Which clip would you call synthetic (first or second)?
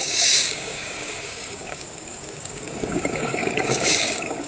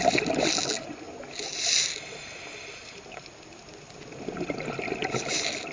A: first